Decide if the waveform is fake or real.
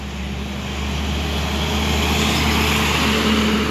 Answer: real